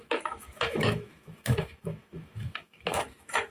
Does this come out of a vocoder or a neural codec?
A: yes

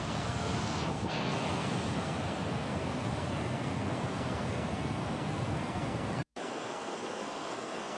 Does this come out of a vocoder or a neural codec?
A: yes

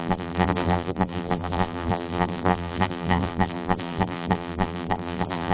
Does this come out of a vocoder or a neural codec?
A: yes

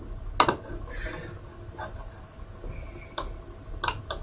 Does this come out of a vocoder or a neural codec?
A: no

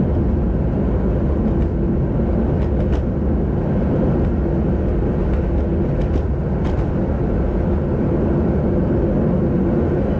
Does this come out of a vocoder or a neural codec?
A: no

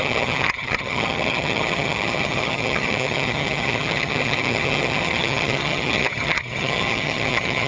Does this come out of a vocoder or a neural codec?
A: yes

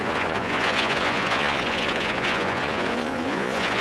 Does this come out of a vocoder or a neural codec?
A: yes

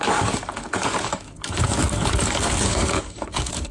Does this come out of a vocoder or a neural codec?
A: yes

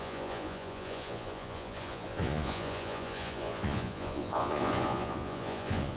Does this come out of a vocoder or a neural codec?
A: yes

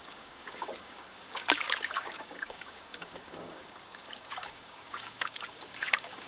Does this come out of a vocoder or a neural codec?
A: yes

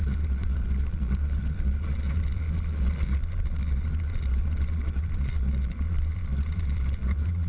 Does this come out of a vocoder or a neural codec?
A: yes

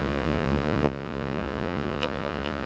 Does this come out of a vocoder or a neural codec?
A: yes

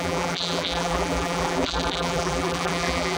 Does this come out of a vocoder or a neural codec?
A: yes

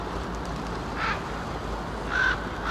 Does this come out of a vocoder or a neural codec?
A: no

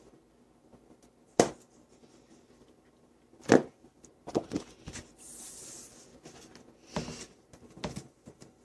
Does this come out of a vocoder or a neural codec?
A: no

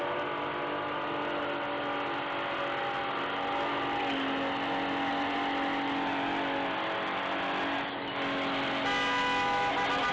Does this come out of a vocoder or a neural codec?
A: no